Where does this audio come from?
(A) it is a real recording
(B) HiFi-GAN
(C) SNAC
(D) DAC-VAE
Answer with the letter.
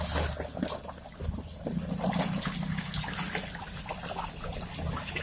A